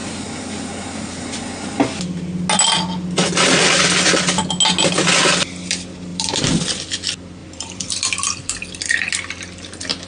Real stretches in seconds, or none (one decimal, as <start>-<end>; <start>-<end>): 0.0-6.1; 6.8-7.4; 9.1-10.1